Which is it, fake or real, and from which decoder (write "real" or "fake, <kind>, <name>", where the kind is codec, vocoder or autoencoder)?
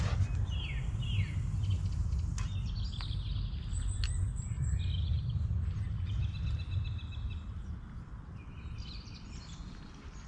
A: real